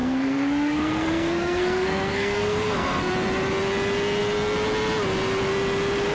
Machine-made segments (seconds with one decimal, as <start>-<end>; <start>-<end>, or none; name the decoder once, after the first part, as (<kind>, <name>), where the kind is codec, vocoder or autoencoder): 0.0-3.1 (codec, SNAC)